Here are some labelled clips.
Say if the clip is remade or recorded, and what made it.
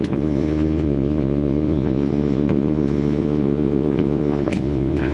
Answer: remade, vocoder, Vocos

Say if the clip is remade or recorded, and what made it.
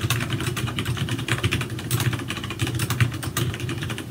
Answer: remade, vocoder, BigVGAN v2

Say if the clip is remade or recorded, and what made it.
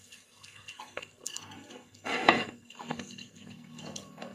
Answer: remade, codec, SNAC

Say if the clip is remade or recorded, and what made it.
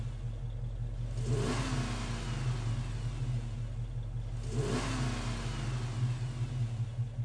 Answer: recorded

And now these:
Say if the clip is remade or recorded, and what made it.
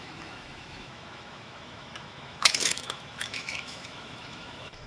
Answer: remade, autoencoder, DAC-VAE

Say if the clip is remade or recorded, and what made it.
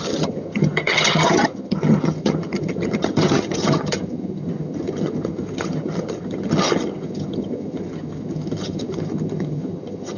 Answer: remade, vocoder, HiFi-GAN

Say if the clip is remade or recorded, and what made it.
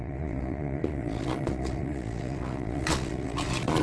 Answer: remade, vocoder, Vocos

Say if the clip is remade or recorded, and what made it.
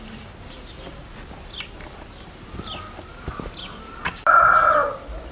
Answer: recorded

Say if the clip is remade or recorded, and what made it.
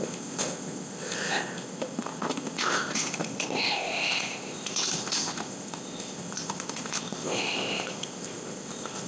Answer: remade, codec, ZipCodec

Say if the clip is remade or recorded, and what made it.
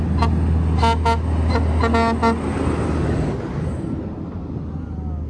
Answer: recorded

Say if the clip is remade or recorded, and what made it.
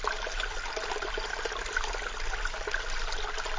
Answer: recorded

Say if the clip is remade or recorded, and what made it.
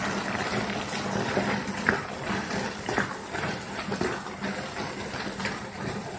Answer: remade, vocoder, BigVGAN v2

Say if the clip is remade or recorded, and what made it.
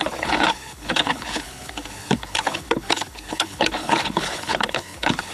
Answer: remade, codec, HILCodec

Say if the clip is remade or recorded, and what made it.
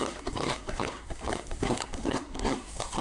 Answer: remade, codec, SNAC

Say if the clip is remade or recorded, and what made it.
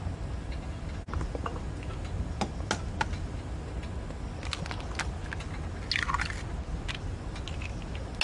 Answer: recorded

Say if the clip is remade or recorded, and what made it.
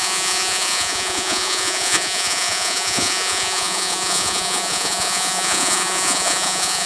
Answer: remade, vocoder, Vocos